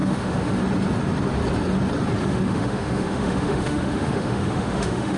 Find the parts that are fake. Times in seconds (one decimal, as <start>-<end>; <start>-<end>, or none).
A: 0.0-0.6; 2.2-5.2